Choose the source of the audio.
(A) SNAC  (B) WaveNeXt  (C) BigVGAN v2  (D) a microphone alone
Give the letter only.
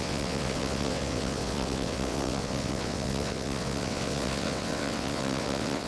B